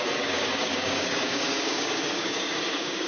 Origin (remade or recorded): remade